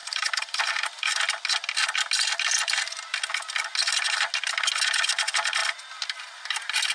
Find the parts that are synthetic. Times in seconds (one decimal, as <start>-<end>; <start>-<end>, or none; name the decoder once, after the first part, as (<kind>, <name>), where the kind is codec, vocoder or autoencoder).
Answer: 0.0-1.2 (vocoder, BigVGAN v2)